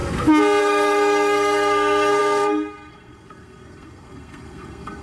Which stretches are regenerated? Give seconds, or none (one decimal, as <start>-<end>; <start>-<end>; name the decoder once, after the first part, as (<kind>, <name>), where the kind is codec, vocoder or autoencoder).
0.6-5.0 (codec, SNAC)